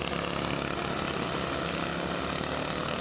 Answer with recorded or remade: recorded